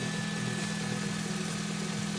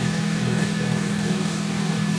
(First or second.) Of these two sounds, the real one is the first